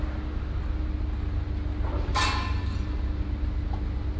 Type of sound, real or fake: real